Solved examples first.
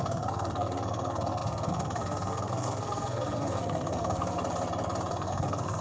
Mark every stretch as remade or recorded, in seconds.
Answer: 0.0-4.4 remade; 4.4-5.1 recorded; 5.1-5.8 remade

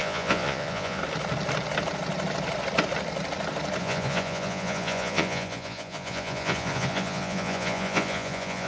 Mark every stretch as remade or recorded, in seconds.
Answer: 0.0-1.0 remade; 1.0-3.8 recorded; 3.8-8.7 remade

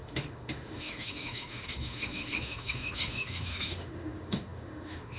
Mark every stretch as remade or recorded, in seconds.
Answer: 0.0-5.2 remade

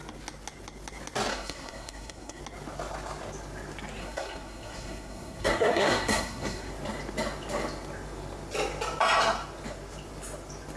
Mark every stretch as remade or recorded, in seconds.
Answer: 0.0-1.3 recorded; 1.3-2.4 remade; 2.4-4.0 recorded; 4.0-6.7 remade; 6.7-10.8 recorded